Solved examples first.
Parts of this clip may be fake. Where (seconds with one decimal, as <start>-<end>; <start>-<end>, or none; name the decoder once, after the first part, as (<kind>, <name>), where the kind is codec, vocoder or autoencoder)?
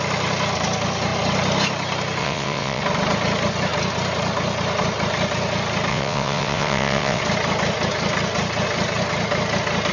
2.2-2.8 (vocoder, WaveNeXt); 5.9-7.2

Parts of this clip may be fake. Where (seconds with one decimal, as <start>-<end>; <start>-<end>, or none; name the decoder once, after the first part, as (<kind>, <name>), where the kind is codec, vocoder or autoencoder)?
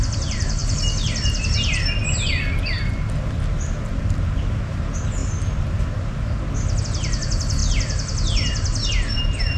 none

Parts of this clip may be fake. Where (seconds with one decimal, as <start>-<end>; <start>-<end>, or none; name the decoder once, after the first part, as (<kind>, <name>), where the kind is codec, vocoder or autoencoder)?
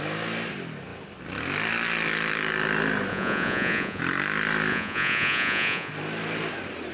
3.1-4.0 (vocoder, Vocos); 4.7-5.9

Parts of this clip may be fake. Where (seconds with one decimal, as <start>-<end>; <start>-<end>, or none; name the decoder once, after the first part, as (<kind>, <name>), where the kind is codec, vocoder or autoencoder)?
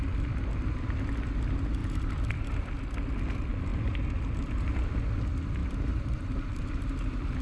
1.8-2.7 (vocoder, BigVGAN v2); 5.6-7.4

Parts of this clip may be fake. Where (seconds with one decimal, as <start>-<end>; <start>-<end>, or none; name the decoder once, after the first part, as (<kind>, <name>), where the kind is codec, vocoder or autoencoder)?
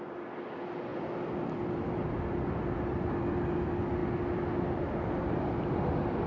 none